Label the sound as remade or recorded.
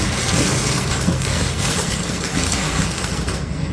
remade